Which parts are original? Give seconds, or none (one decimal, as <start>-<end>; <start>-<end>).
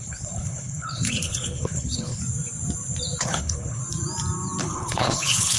2.2-3.2; 3.8-4.6